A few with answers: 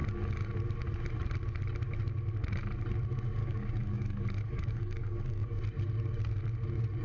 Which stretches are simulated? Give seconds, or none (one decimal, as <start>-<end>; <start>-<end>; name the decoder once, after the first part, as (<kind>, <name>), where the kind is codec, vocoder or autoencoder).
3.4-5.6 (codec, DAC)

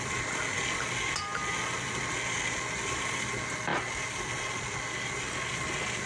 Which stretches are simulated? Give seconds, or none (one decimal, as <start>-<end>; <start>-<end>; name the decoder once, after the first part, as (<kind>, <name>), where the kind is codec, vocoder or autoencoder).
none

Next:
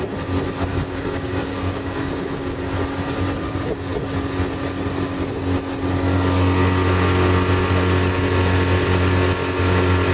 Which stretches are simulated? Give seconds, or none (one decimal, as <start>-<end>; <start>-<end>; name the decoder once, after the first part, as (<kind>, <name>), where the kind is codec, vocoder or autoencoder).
0.7-2.6 (codec, DAC)

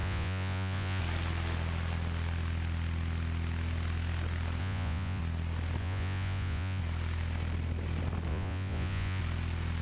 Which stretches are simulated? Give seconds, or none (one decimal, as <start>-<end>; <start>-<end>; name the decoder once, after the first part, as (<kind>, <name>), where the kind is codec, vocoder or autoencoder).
0.0-1.0 (vocoder, Vocos); 4.6-5.2; 5.8-6.8; 8.3-9.2